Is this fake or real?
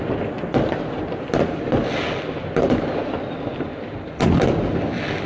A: real